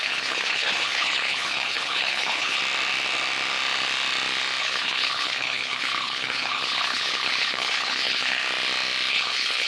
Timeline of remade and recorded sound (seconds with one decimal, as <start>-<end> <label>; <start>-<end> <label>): 0.0-2.6 remade; 2.6-4.6 recorded; 4.6-8.4 remade; 8.4-9.1 recorded; 9.1-9.7 remade